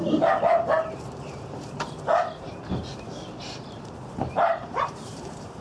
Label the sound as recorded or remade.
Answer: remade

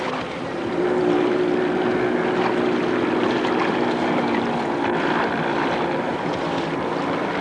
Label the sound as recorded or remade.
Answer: recorded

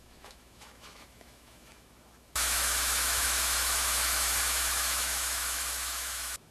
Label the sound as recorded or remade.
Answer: remade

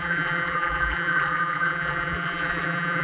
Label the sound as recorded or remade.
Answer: remade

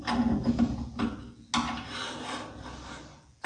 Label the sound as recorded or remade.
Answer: recorded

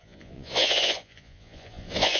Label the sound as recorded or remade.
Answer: remade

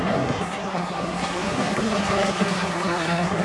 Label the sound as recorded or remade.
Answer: remade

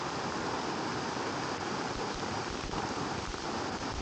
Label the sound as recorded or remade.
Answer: recorded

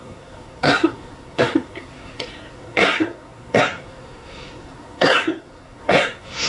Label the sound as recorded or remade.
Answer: remade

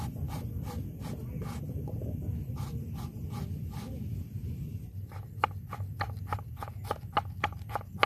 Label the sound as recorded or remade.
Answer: recorded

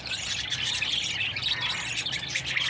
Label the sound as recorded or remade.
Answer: recorded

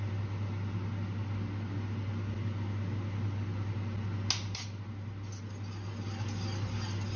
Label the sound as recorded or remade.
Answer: recorded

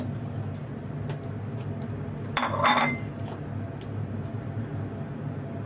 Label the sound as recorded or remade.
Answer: recorded